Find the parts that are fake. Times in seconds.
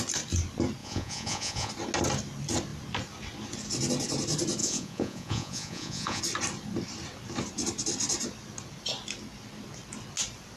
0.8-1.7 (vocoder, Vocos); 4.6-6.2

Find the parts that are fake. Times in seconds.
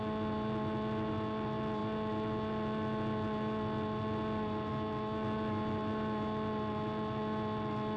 none